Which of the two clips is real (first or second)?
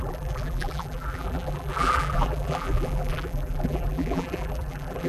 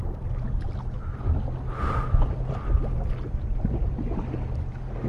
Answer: second